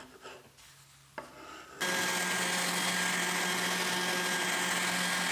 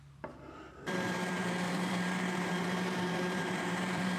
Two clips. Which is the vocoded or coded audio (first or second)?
second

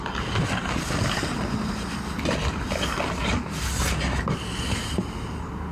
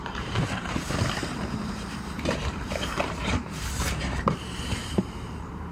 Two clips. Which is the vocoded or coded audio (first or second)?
second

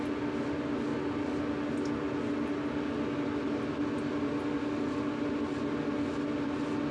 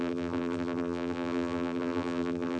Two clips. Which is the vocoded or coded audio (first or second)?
second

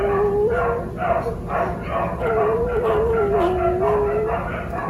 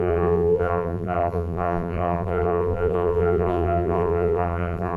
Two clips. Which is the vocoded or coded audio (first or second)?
second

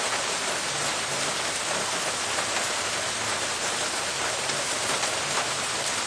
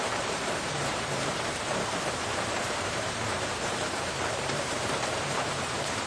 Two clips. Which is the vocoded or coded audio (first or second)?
second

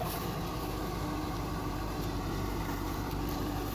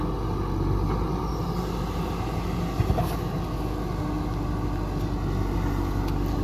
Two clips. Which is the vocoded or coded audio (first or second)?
first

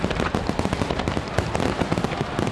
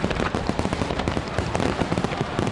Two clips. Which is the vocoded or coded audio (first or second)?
second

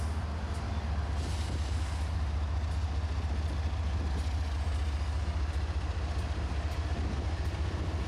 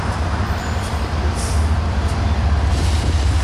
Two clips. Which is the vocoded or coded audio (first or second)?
second